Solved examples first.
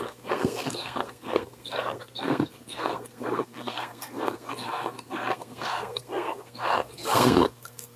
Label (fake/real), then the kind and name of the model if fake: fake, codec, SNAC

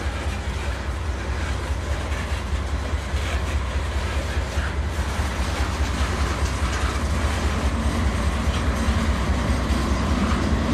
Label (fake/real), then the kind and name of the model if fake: real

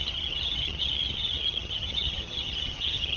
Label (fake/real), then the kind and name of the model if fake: fake, vocoder, HiFi-GAN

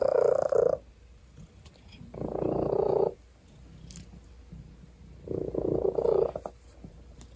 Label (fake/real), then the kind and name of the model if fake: real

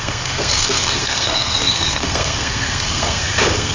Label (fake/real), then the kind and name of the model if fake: fake, codec, SNAC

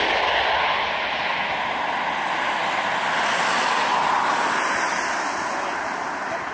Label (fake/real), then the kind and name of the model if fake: real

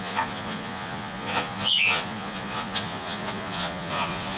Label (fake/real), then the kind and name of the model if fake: fake, vocoder, Vocos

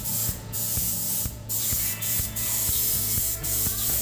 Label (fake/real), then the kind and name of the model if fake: fake, vocoder, Vocos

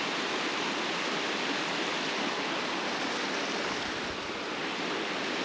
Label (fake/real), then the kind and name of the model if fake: fake, vocoder, BigVGAN v2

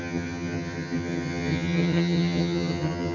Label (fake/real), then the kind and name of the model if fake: fake, vocoder, HiFi-GAN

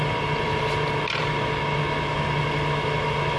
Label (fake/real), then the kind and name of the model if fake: real